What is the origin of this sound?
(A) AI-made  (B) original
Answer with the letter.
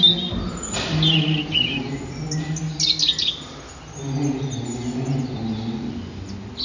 B